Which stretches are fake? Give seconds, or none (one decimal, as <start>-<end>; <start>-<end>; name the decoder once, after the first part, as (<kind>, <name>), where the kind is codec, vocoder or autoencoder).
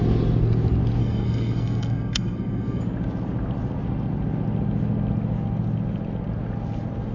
1.0-2.8 (codec, SNAC)